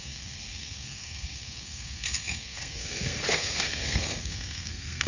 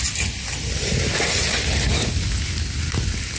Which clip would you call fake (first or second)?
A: first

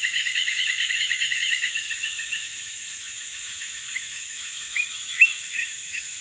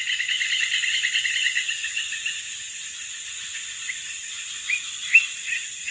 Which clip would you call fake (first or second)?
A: first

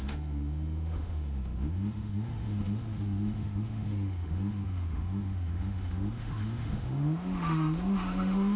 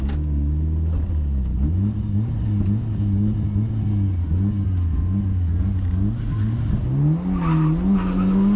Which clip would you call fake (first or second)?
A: first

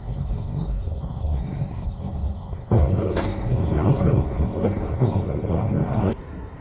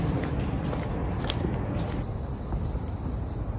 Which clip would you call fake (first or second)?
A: first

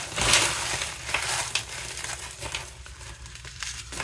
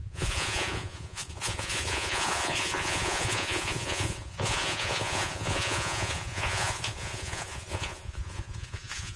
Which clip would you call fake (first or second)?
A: second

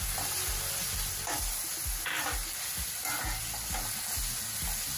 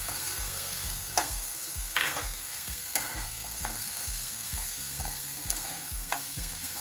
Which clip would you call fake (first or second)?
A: second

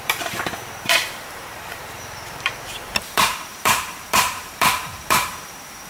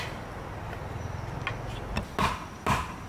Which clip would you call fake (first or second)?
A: first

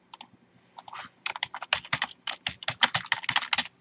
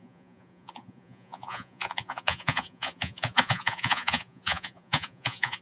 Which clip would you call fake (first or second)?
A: second